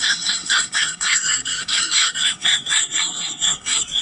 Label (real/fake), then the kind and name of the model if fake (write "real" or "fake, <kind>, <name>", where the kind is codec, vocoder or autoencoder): fake, codec, SNAC